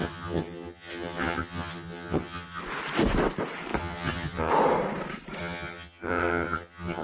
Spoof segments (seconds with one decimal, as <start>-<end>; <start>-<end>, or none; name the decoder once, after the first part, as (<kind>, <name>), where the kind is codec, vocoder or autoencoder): 0.0-2.6 (vocoder, HiFi-GAN); 3.8-4.5; 5.4-7.0